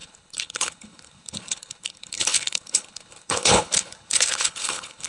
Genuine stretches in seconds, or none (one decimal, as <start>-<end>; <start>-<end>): none